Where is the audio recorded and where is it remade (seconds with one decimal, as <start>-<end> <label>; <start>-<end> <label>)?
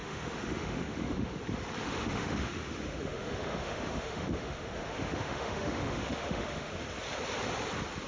0.0-1.4 remade; 1.4-1.8 recorded; 1.8-6.7 remade; 6.7-8.1 recorded